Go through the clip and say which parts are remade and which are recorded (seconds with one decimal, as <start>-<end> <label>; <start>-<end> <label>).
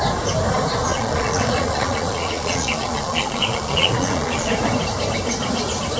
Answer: 0.0-0.9 recorded; 0.9-4.5 remade; 4.5-6.0 recorded